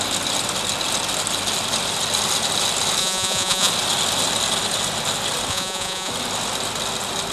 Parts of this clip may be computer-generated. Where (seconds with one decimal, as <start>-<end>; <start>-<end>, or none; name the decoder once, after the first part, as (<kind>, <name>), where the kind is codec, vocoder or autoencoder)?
3.0-3.7 (vocoder, Vocos); 5.5-6.1